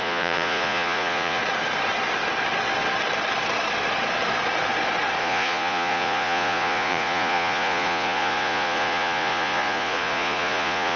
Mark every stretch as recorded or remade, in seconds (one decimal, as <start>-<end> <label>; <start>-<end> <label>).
0.0-1.4 remade; 1.4-5.2 recorded; 5.2-11.0 remade